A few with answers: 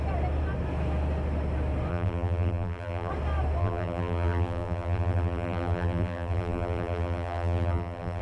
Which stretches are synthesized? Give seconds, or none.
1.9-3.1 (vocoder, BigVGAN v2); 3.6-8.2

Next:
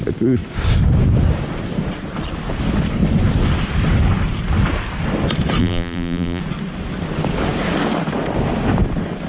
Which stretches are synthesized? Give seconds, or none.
5.6-6.4 (vocoder, BigVGAN v2)